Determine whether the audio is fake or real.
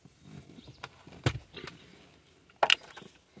real